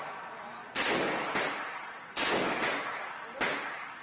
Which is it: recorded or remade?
recorded